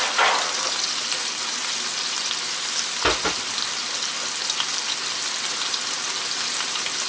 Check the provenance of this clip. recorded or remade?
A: recorded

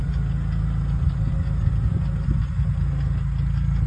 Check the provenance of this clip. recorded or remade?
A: recorded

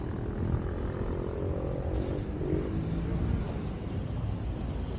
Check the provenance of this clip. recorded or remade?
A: recorded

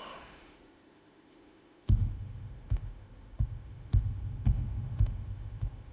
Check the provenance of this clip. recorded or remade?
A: remade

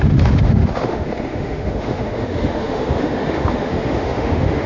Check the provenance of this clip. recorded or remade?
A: remade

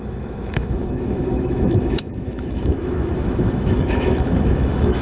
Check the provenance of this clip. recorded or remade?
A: remade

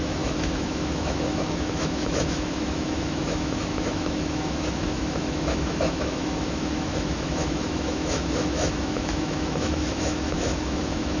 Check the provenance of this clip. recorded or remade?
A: remade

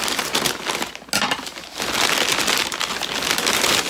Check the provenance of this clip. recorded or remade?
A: recorded